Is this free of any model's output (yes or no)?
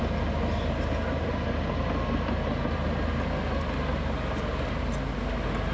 yes